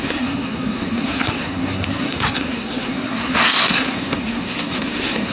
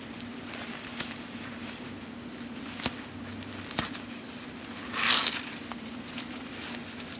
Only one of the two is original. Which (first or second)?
second